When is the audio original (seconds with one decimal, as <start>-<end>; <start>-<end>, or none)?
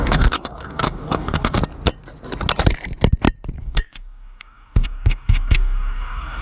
1.6-3.6